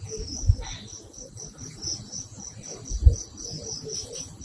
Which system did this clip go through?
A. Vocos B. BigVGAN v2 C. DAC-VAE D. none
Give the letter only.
D